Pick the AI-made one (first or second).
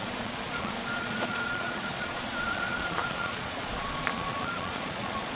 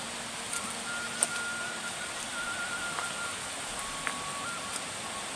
first